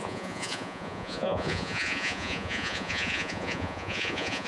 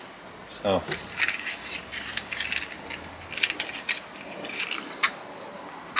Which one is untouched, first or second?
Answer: second